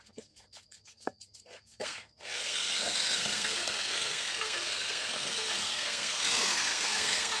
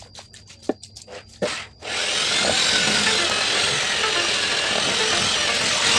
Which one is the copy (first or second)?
first